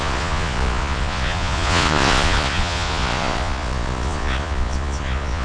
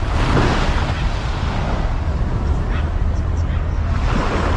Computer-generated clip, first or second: first